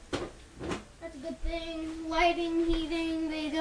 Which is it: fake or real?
real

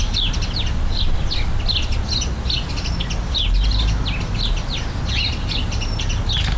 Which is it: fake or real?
real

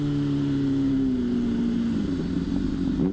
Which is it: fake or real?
real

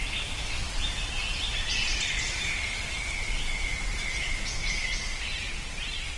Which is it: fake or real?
real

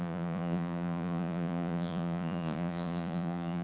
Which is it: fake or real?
fake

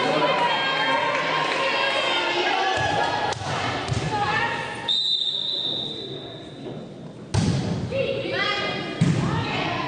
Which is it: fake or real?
real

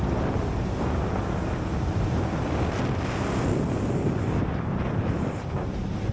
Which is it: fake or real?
real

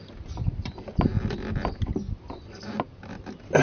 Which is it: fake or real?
real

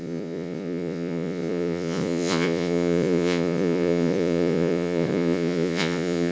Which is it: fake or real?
fake